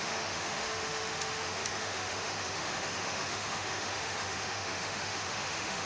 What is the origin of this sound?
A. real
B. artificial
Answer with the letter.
B